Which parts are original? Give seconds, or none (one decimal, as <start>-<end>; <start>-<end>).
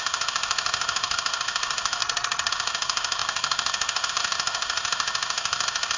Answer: 2.0-2.5